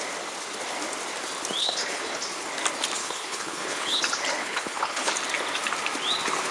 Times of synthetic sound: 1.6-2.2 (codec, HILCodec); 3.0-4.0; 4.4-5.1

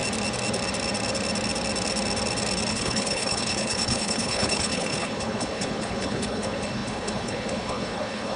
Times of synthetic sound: 2.7-8.4 (codec, HILCodec)

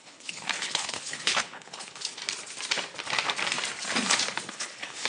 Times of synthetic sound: 0.0-2.2 (codec, HILCodec); 4.5-5.1